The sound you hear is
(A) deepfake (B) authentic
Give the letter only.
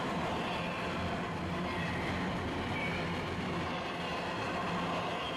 B